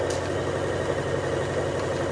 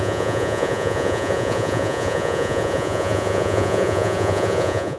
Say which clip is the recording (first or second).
first